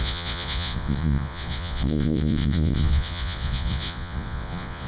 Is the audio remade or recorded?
remade